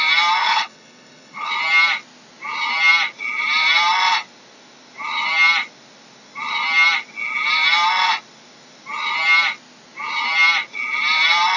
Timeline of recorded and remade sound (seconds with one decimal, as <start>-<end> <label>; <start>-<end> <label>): 0.0-0.4 recorded; 0.4-1.5 remade; 1.5-11.6 recorded